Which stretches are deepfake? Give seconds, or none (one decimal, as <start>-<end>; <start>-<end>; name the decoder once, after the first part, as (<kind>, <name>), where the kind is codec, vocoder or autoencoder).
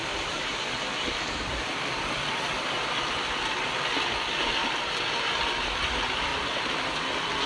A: 0.0-3.2 (vocoder, BigVGAN v2); 4.6-5.1; 6.3-7.0